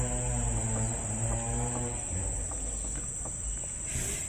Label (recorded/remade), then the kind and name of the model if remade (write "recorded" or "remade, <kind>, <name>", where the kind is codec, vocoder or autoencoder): recorded